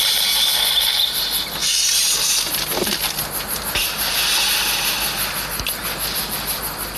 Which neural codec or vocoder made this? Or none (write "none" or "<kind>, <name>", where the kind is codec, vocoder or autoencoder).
none